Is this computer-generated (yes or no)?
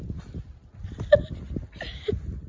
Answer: no